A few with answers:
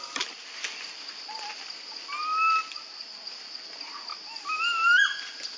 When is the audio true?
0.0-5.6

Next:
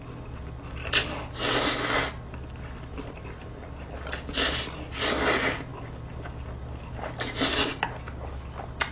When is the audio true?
0.0-8.9

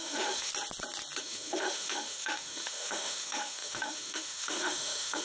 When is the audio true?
0.5-1.2